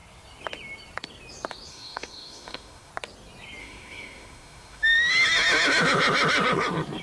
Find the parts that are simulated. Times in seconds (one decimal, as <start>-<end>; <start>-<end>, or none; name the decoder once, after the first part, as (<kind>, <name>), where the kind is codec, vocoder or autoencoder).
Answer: 1.7-2.9 (autoencoder, DAC-VAE); 3.6-5.1